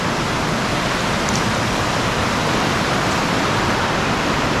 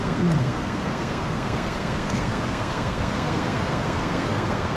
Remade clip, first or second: second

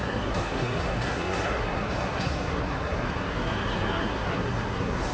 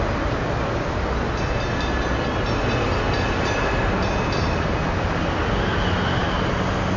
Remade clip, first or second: first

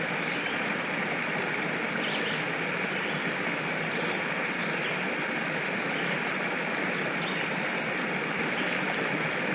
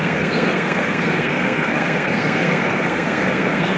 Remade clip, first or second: second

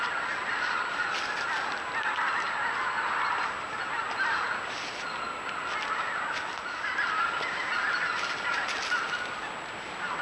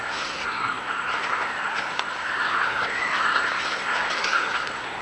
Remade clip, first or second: second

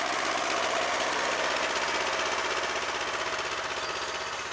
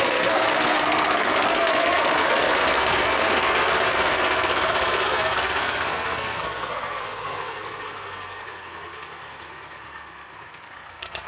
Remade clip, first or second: second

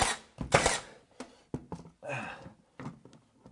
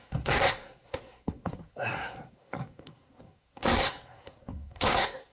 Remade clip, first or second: second